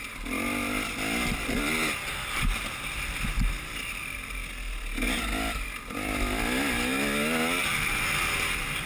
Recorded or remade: recorded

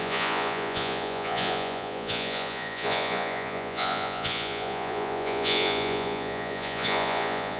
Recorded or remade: remade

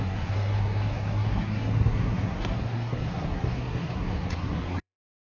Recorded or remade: remade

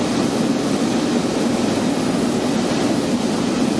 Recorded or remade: recorded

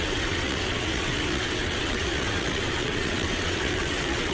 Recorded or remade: remade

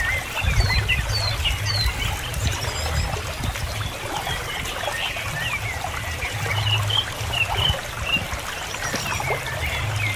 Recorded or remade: recorded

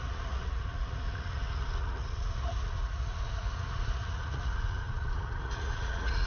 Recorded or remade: remade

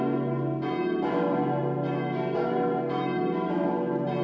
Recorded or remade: recorded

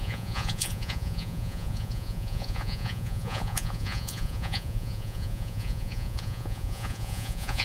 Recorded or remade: remade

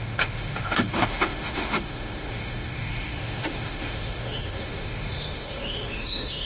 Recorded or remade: remade